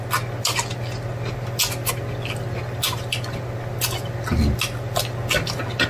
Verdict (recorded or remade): recorded